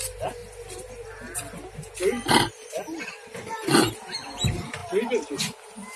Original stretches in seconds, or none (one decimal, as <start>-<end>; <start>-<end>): 0.0-6.0